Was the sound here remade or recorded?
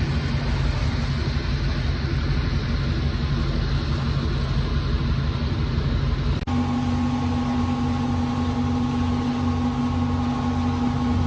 recorded